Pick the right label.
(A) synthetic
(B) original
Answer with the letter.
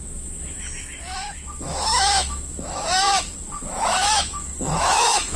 A